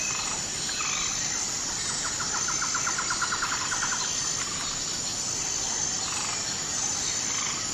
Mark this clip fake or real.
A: fake